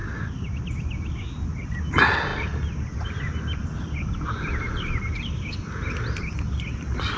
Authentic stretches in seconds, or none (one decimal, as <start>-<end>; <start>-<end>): 0.0-7.2